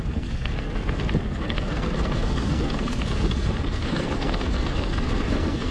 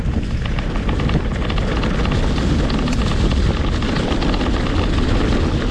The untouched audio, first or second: second